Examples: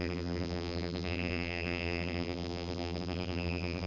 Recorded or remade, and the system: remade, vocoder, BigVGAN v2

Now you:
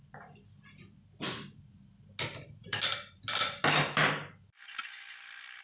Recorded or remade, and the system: recorded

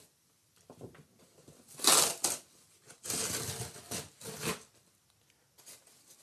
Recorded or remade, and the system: recorded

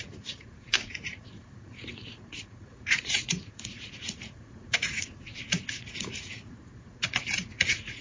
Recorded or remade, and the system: remade, vocoder, Vocos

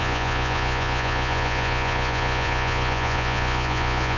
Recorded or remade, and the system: remade, vocoder, Vocos